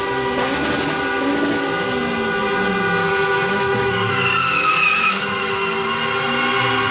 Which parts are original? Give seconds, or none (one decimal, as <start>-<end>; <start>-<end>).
0.0-3.0; 4.1-4.7; 5.4-6.9